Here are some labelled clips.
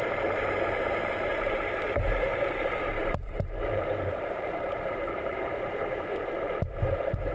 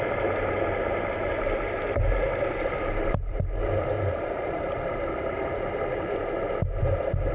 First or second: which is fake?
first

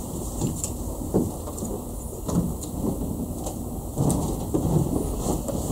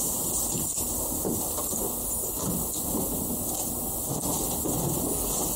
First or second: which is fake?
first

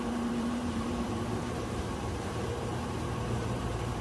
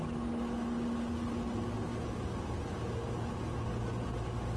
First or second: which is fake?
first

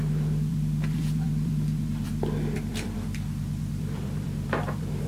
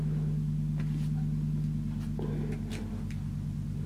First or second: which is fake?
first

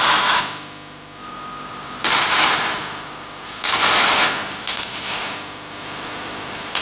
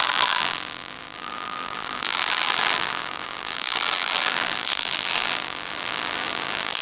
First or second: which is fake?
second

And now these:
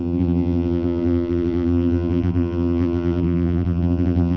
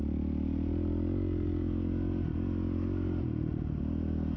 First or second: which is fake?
first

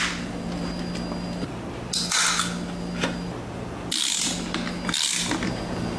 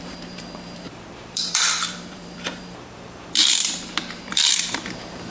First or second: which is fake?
second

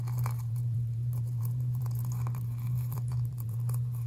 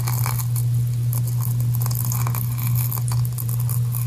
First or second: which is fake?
first